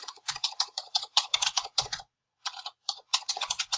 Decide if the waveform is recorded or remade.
remade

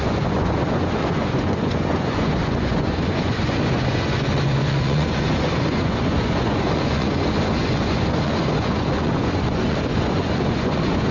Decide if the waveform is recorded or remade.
remade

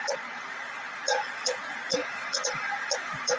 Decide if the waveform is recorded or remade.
remade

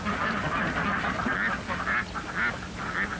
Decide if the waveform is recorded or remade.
recorded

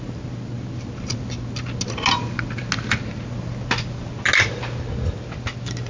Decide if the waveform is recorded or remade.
recorded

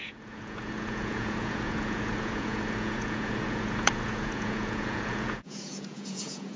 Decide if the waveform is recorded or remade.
remade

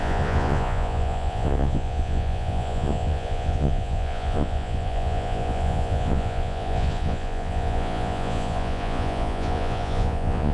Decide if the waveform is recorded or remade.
remade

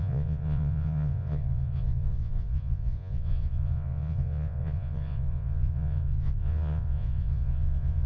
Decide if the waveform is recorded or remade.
remade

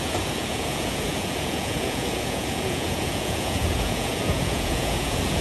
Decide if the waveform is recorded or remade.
remade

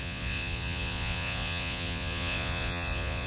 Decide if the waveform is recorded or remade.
remade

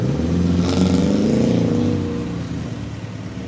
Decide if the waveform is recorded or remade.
recorded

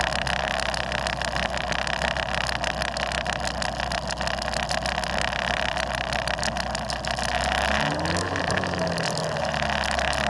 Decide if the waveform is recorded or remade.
recorded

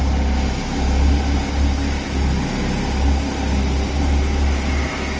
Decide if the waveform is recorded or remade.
recorded